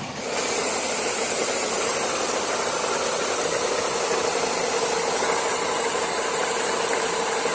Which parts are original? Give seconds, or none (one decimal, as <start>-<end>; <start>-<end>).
0.0-7.5